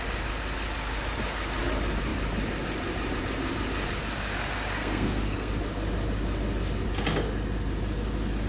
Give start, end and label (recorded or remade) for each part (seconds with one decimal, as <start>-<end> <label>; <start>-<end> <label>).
0.0-4.8 recorded; 4.8-5.5 remade; 5.5-8.5 recorded